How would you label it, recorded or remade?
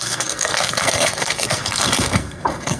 remade